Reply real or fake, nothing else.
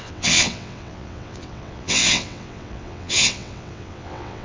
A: fake